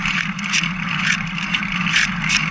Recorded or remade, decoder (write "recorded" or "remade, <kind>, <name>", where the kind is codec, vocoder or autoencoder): remade, vocoder, BigVGAN v2